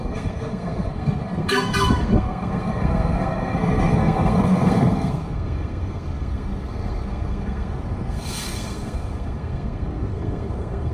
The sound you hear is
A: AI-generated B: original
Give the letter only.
A